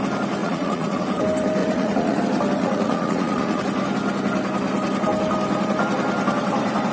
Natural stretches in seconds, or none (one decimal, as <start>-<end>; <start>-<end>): 0.0-0.4; 1.2-1.6; 2.2-2.6; 3.6-6.9